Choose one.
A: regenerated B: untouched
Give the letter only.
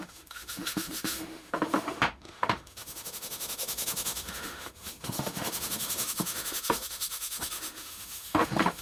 A